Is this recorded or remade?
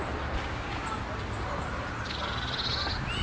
recorded